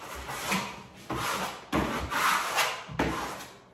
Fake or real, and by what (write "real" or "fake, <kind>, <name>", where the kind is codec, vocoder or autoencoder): real